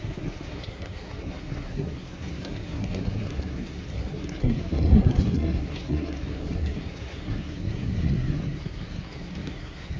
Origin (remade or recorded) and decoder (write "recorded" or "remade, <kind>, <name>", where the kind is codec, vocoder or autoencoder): remade, codec, SNAC